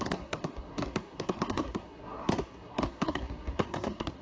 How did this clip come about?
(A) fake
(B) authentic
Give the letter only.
A